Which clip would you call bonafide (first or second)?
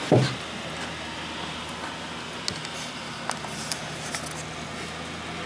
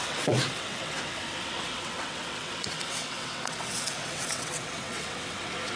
first